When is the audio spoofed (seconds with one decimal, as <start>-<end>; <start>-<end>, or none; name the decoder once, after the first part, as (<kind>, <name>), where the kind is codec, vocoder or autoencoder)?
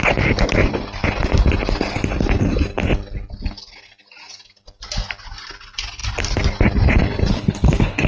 7.3-8.1 (codec, HILCodec)